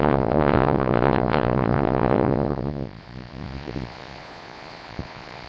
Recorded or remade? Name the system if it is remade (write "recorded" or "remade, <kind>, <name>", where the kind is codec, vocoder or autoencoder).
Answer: remade, vocoder, Vocos